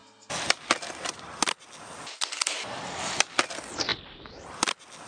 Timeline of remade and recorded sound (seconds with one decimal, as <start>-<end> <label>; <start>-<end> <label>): 0.0-5.1 recorded